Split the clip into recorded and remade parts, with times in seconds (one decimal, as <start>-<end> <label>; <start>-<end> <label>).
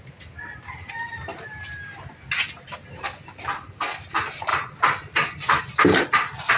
0.0-6.6 recorded